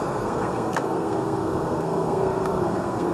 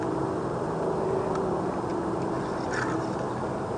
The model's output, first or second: first